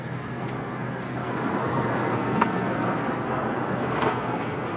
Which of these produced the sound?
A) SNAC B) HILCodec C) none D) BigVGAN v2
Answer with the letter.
A